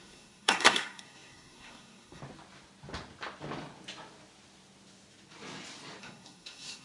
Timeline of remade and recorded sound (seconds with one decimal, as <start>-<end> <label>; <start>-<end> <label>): 0.0-2.2 remade; 2.2-6.0 recorded; 6.0-6.8 remade